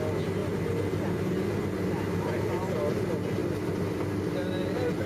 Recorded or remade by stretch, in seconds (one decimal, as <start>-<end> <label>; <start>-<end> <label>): 0.0-5.1 recorded